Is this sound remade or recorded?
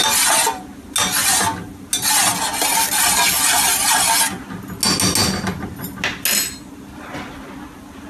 recorded